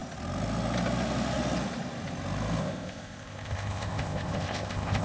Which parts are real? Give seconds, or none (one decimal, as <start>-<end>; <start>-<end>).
0.0-2.6